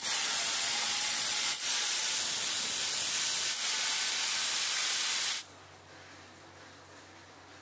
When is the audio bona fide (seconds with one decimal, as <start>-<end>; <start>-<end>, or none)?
2.0-7.6